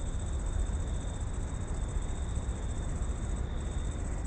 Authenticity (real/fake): real